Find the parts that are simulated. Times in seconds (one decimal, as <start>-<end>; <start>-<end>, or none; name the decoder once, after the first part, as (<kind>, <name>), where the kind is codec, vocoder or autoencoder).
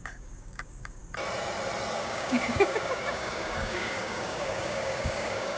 0.0-1.0 (codec, DAC); 2.0-5.6